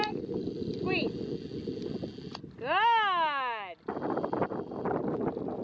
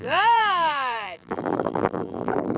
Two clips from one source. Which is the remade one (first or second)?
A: second